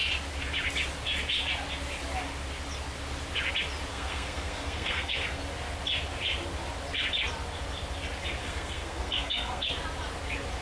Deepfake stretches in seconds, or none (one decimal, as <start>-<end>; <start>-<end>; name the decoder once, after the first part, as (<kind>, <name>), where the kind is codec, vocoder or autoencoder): 3.9-5.4 (codec, SNAC); 8.4-9.7